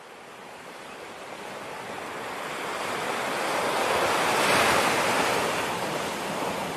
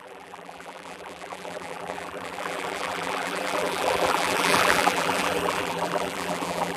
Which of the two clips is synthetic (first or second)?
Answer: second